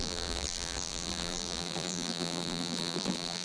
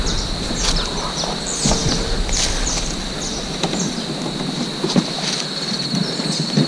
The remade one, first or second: first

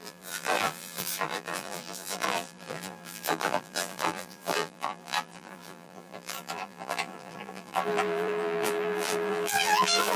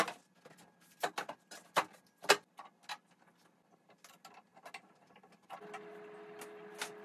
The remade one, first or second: first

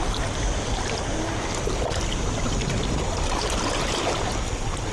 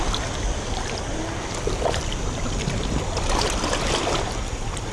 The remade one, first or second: second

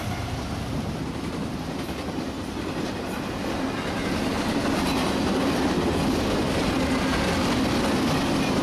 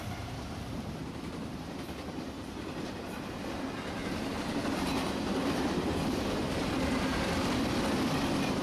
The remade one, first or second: second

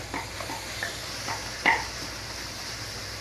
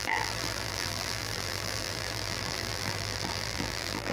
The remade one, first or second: second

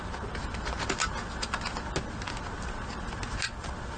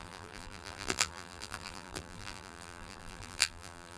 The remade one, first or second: second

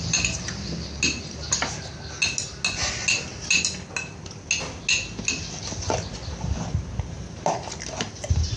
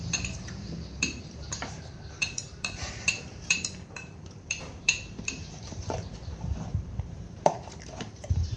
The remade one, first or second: second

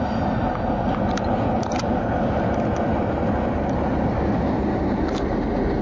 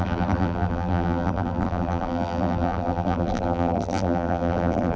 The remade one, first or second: second